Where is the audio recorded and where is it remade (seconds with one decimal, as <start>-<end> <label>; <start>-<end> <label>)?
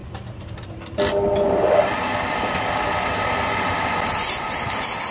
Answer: 0.0-5.1 recorded